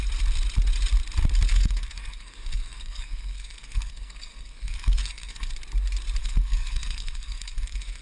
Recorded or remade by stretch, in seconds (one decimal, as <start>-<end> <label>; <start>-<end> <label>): 0.0-1.5 recorded; 1.5-5.5 remade; 5.5-6.2 recorded; 6.2-8.0 remade

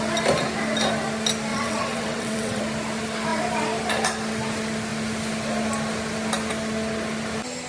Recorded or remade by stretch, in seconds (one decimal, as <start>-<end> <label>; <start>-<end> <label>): 0.0-1.5 recorded; 1.5-2.6 remade; 2.6-7.7 recorded

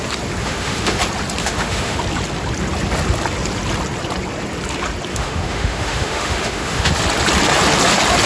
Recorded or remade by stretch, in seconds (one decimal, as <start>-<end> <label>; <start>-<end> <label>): 0.0-0.4 recorded; 0.4-1.0 remade; 1.0-1.4 recorded; 1.4-2.0 remade; 2.0-5.1 recorded; 5.1-6.9 remade; 6.9-8.3 recorded

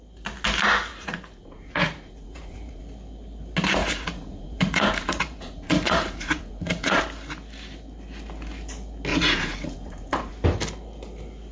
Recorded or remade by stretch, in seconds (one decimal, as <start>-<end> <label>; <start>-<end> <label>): 0.0-0.9 recorded; 0.9-2.8 remade; 2.8-3.8 recorded; 3.8-7.0 remade; 7.0-9.1 recorded; 9.1-10.3 remade; 10.3-11.5 recorded

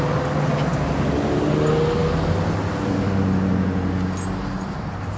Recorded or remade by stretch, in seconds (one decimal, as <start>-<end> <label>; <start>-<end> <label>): 0.0-5.2 recorded

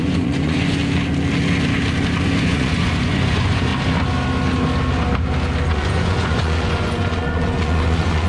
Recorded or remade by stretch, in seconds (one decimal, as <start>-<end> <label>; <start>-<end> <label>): 0.0-0.8 remade; 0.8-2.4 recorded; 2.4-3.7 remade; 3.7-5.7 recorded; 5.7-8.3 remade

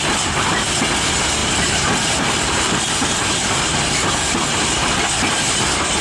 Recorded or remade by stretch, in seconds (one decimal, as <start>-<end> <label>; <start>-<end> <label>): 0.0-1.4 recorded; 1.4-5.0 remade; 5.0-6.0 recorded